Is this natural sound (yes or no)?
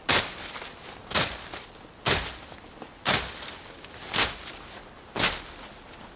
yes